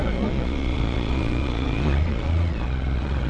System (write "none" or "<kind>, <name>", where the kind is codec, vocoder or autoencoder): vocoder, Vocos